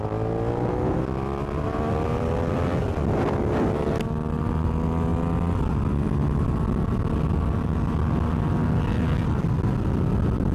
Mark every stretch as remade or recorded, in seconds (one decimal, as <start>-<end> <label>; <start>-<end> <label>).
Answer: 0.0-10.5 recorded